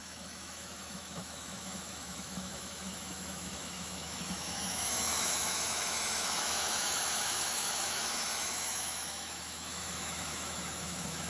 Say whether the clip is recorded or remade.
remade